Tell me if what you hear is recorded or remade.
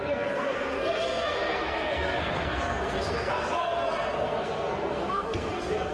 remade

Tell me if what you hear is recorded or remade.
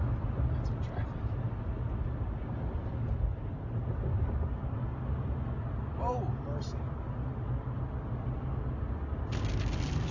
recorded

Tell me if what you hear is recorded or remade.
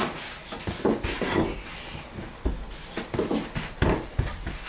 recorded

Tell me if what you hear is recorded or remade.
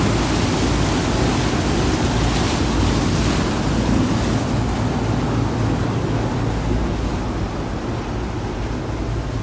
recorded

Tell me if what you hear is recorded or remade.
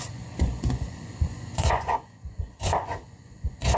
remade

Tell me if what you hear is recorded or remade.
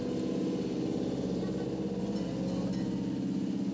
recorded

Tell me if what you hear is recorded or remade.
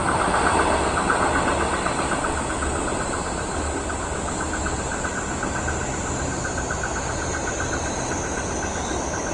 recorded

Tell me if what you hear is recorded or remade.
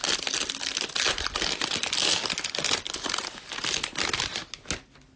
recorded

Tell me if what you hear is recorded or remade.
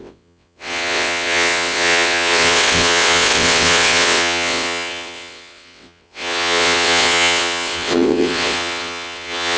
remade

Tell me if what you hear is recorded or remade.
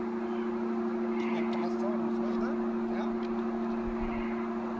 recorded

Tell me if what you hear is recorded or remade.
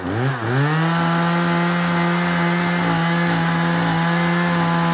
recorded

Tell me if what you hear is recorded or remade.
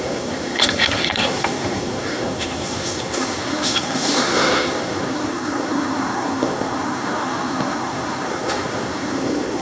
remade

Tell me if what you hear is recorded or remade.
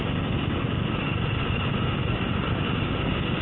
remade